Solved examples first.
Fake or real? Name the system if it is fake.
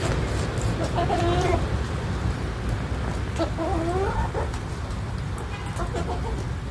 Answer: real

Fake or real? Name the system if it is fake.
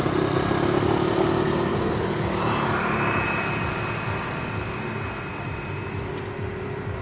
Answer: real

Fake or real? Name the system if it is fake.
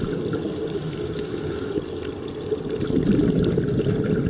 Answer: real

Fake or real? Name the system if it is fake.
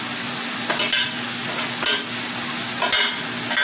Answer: real